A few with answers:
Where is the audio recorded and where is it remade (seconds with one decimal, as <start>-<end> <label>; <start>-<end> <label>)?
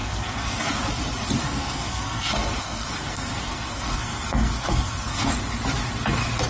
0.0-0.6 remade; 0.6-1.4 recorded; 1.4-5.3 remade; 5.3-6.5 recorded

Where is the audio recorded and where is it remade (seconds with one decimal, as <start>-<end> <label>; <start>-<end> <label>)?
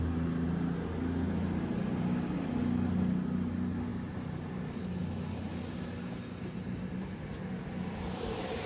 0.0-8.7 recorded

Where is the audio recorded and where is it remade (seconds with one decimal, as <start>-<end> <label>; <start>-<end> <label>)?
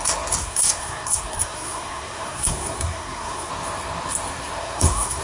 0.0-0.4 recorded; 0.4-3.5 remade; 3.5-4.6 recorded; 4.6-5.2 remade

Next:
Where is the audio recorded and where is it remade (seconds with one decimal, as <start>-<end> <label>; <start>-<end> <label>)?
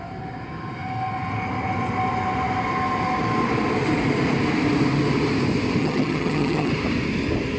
0.0-5.8 recorded; 5.8-6.7 remade; 6.7-7.6 recorded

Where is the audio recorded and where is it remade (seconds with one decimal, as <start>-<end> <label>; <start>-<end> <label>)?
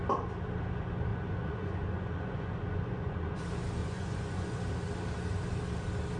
0.0-1.1 recorded; 1.1-3.4 remade; 3.4-3.8 recorded; 3.8-4.6 remade; 4.6-6.2 recorded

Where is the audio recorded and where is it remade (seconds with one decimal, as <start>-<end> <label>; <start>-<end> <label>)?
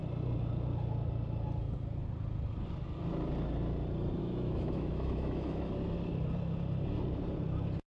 0.0-4.2 recorded; 4.2-5.7 remade; 5.7-8.0 recorded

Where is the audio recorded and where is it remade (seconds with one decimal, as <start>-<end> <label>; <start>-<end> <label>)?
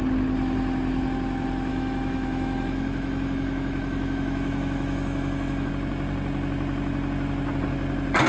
0.0-1.7 recorded; 1.7-5.7 remade; 5.7-8.3 recorded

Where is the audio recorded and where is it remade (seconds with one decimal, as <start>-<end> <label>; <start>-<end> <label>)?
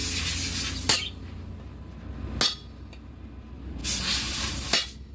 0.0-5.1 recorded